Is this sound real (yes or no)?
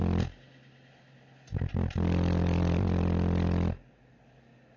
yes